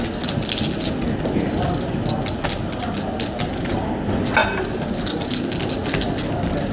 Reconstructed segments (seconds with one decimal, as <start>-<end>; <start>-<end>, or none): none